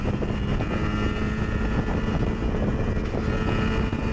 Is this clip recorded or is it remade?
recorded